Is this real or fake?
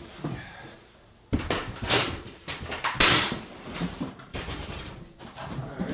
fake